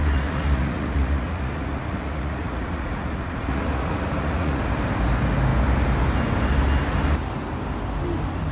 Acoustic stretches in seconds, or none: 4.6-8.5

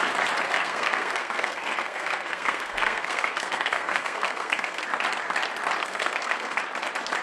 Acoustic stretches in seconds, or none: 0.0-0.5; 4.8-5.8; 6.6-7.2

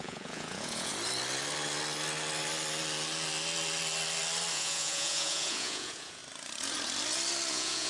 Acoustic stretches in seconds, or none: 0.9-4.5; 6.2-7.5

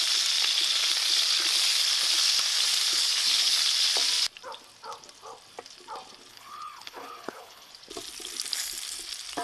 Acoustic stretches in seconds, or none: 0.0-2.9; 3.6-6.3; 7.7-9.4

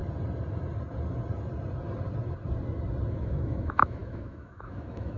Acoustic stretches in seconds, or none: 0.0-3.1

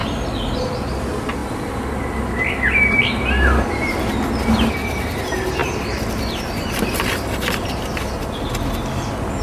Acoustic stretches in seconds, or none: 0.0-1.4; 3.3-9.4